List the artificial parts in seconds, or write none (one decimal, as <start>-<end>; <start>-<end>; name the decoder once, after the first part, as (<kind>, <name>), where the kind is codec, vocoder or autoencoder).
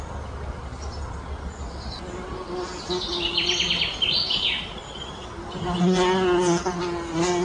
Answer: none